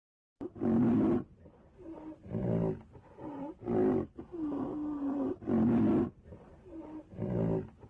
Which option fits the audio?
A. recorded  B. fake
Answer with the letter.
B